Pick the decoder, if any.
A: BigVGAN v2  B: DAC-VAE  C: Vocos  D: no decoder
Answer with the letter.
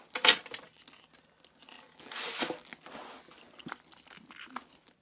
D